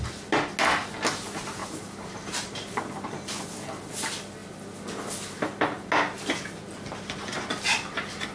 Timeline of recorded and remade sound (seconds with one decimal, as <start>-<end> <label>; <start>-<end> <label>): 0.0-1.6 recorded; 1.6-2.8 remade; 2.8-8.3 recorded